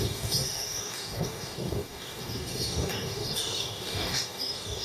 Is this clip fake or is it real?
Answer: fake